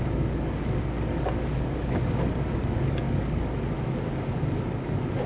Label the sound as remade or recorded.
remade